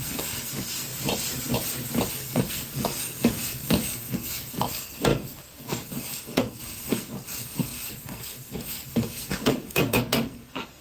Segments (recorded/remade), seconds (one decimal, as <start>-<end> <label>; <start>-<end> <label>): 0.0-0.9 remade; 0.9-2.1 recorded; 2.1-10.8 remade